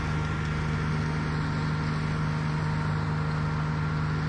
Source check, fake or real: real